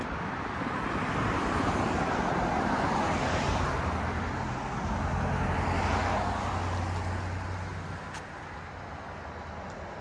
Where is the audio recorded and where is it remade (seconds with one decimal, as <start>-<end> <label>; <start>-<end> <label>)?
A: 0.0-10.0 recorded